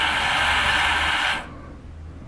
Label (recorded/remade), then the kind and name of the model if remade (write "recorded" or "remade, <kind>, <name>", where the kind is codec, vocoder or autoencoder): recorded